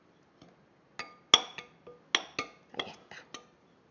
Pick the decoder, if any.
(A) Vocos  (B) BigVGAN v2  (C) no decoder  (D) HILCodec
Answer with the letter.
C